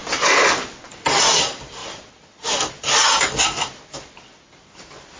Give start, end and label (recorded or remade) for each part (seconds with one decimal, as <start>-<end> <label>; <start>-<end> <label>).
0.0-5.2 recorded

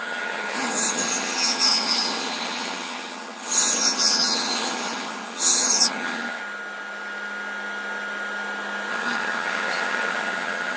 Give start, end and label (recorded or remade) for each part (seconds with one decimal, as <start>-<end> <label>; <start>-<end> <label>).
0.0-6.4 remade; 6.4-8.9 recorded; 8.9-10.8 remade

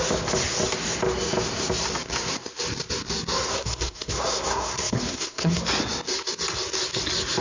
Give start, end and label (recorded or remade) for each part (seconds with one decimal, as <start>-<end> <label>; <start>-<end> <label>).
0.0-3.5 recorded; 3.5-5.6 remade; 5.6-7.4 recorded

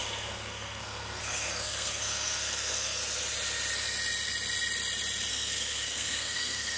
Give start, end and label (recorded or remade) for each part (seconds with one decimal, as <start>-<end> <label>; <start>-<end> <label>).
0.0-3.0 remade; 3.0-5.3 recorded; 5.3-6.8 remade